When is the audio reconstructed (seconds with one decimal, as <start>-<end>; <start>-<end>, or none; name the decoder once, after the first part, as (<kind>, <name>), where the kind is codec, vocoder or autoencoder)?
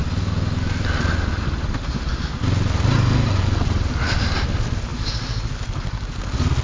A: none